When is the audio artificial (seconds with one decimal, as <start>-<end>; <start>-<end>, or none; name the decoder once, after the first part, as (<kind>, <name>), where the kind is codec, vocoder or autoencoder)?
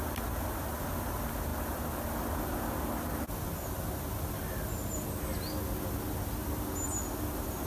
none